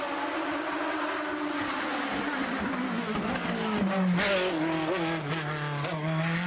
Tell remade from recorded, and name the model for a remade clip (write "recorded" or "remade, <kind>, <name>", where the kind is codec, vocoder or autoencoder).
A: recorded